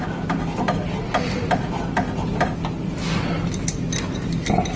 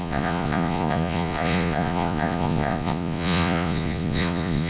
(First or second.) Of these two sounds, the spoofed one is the second